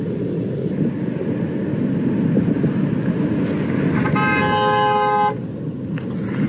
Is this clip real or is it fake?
real